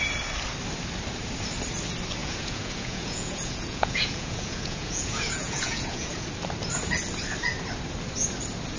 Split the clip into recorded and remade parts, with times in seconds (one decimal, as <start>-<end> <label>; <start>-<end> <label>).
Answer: 0.0-2.2 recorded; 2.2-6.3 remade; 6.3-8.8 recorded